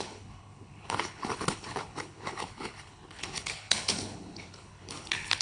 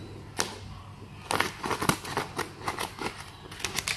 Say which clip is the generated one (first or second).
first